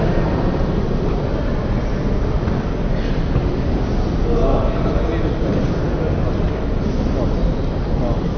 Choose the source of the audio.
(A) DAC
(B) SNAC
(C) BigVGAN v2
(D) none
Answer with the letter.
D